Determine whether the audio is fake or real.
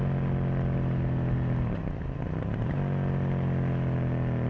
real